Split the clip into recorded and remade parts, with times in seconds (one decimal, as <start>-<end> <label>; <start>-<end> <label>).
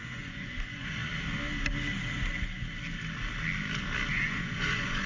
0.0-1.0 remade; 1.0-4.1 recorded; 4.1-5.1 remade